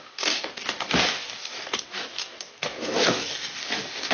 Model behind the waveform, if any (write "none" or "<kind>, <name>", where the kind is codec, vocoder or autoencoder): codec, DAC